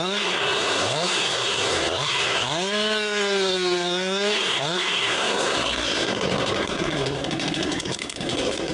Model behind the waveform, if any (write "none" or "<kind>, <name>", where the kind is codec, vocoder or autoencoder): codec, SNAC